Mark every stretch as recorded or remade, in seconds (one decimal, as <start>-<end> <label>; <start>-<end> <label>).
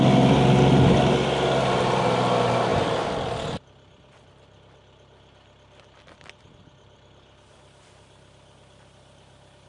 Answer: 0.0-9.7 recorded